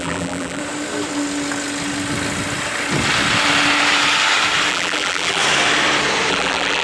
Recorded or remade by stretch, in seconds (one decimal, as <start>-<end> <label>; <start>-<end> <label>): 0.0-0.6 remade; 0.6-4.7 recorded; 4.7-5.4 remade; 5.4-6.3 recorded; 6.3-6.8 remade

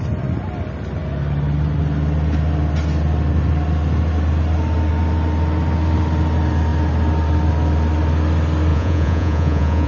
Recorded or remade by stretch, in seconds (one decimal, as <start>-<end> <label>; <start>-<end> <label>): 0.0-8.7 recorded; 8.7-9.9 remade

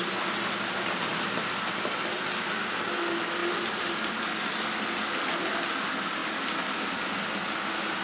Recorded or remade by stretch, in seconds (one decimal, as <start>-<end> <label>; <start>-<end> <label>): 0.0-8.0 recorded

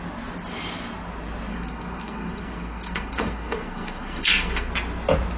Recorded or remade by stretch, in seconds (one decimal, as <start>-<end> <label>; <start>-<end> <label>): 0.0-1.5 recorded; 1.5-4.7 remade; 4.7-5.4 recorded

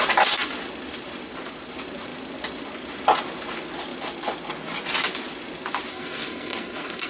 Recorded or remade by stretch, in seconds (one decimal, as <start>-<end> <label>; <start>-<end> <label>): 0.0-5.9 recorded; 5.9-7.1 remade